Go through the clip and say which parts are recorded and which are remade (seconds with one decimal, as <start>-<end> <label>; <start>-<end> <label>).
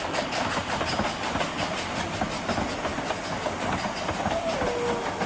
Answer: 0.0-5.3 recorded